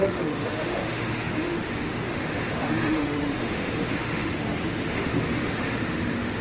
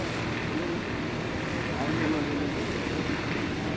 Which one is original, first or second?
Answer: second